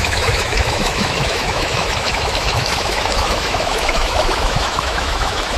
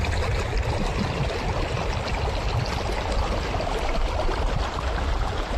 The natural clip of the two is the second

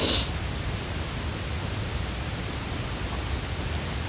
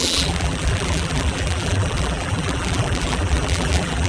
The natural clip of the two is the first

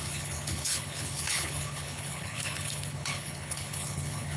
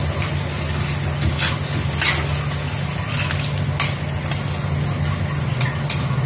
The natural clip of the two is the second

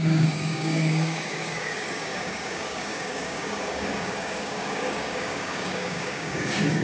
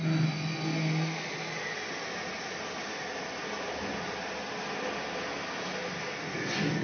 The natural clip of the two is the second